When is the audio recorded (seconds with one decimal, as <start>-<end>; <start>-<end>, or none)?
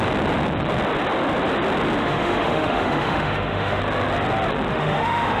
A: 0.0-2.0; 3.8-4.7